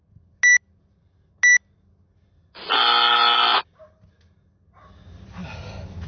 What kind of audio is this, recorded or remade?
recorded